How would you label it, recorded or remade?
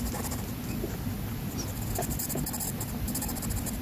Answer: recorded